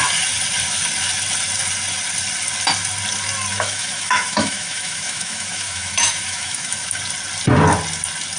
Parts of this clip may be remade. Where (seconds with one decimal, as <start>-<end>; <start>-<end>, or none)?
3.5-7.0